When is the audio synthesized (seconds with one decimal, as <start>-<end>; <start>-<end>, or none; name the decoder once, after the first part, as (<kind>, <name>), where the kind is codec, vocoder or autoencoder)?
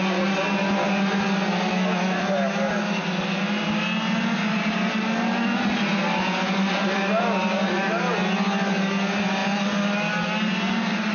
none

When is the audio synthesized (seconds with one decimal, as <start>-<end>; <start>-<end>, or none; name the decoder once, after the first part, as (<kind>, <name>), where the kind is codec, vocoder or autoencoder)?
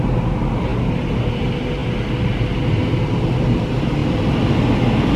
none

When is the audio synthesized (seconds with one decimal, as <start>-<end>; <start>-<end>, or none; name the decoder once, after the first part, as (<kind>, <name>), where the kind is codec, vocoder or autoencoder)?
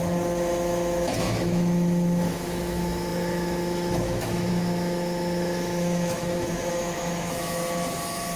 0.0-8.4 (autoencoder, DAC-VAE)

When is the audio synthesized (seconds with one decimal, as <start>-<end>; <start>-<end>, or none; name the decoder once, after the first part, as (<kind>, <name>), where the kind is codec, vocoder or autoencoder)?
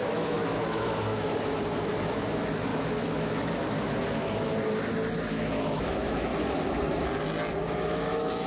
0.0-4.5 (autoencoder, DAC-VAE); 5.3-6.3; 7.5-8.5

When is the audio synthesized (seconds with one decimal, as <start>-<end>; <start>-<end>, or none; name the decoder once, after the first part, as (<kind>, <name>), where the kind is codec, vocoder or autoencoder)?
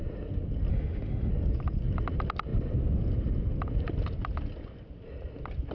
0.7-1.3 (autoencoder, DAC-VAE)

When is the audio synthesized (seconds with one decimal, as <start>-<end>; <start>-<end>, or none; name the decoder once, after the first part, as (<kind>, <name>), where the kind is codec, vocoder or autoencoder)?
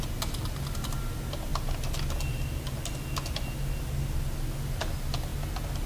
none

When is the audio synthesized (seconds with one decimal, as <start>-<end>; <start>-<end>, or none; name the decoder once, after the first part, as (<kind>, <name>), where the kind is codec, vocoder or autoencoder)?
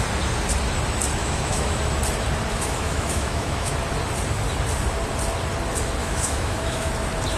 1.2-1.8 (autoencoder, DAC-VAE); 2.5-3.7; 6.0-6.9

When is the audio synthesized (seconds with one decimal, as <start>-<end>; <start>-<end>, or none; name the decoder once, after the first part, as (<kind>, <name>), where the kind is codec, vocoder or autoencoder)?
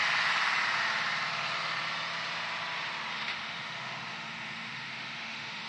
3.1-5.7 (autoencoder, DAC-VAE)